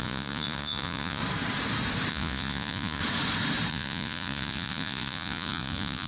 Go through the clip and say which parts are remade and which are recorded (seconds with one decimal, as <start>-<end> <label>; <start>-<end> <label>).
0.0-1.2 remade; 1.2-2.1 recorded; 2.1-3.0 remade; 3.0-3.7 recorded; 3.7-6.1 remade